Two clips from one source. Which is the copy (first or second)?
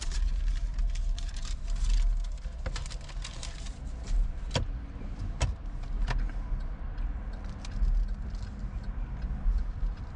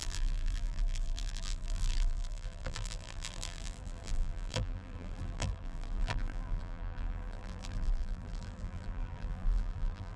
second